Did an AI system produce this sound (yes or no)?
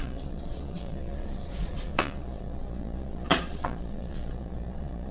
yes